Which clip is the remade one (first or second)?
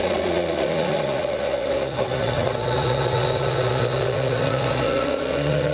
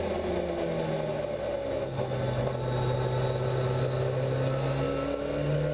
first